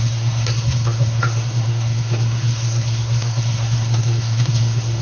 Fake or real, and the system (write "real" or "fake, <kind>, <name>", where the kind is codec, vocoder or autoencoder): fake, codec, SNAC